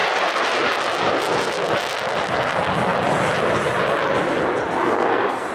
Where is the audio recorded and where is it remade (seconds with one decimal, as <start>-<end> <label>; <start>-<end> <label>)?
0.0-4.8 recorded; 4.8-5.5 remade